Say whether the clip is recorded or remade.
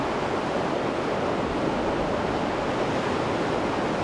recorded